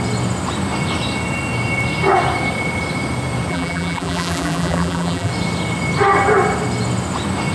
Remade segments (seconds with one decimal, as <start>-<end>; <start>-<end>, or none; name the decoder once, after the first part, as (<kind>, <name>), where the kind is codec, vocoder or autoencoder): 3.5-5.3 (vocoder, BigVGAN v2)